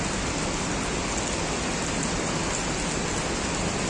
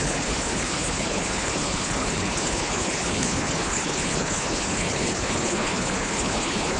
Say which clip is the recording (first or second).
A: first